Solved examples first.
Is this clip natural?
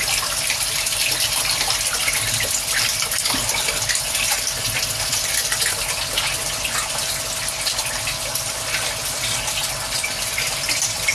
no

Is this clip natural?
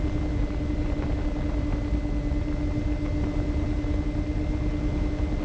yes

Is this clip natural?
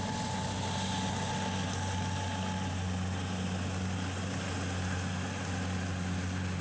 yes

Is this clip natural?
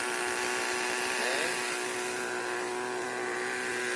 yes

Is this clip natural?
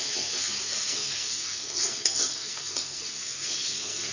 no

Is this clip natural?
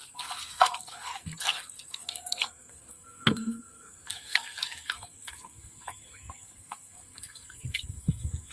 no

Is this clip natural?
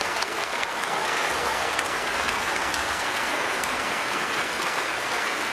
no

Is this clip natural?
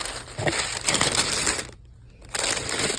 yes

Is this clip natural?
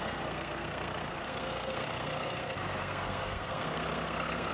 no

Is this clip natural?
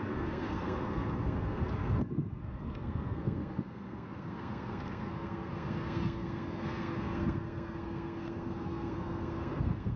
no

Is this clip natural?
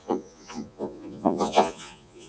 no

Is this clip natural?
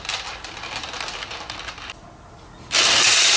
yes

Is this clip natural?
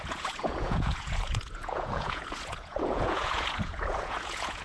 no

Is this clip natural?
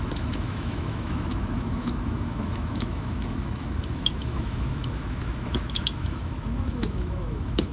no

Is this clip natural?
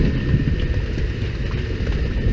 yes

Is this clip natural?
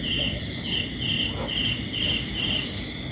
yes